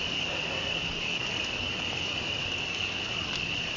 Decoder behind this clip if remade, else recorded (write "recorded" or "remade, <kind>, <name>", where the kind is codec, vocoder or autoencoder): remade, codec, DAC